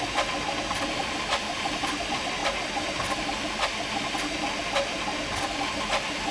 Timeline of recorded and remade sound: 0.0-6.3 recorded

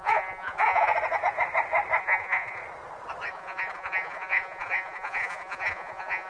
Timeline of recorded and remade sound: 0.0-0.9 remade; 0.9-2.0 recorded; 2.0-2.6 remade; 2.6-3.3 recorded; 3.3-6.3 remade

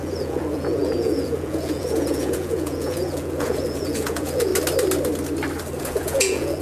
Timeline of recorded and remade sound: 0.0-4.5 remade; 4.5-5.8 recorded; 5.8-6.6 remade

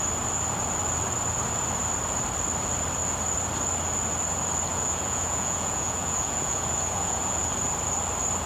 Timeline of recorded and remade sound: 0.0-4.7 recorded; 4.7-7.5 remade; 7.5-8.5 recorded

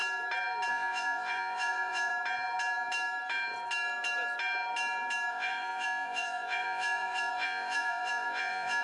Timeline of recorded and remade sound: 0.0-0.7 recorded; 0.7-2.1 remade; 2.1-5.3 recorded; 5.3-8.8 remade

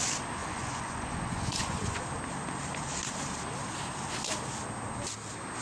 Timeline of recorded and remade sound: 0.0-0.4 recorded; 0.4-2.0 remade; 2.0-5.6 recorded